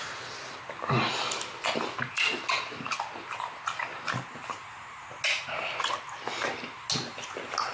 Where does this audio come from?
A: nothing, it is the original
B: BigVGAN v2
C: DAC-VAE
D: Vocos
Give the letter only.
A